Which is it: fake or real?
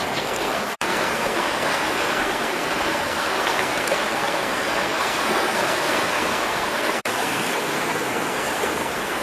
fake